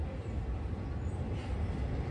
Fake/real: real